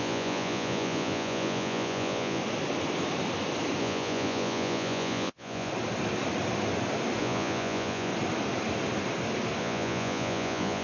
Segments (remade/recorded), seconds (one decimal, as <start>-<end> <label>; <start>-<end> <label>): 0.0-2.4 remade; 2.4-3.8 recorded; 3.8-5.7 remade; 5.7-7.2 recorded; 7.2-8.1 remade; 8.1-9.6 recorded; 9.6-10.8 remade